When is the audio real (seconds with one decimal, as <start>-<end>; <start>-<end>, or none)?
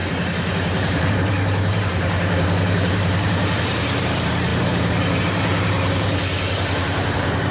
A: none